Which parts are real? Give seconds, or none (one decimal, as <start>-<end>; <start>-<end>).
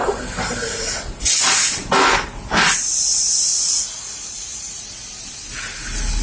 0.0-3.5; 4.9-6.2